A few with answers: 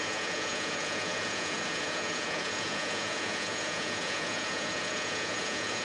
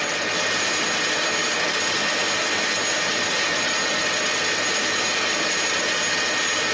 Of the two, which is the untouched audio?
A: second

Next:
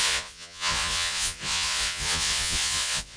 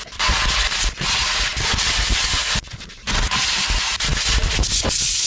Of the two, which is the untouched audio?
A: second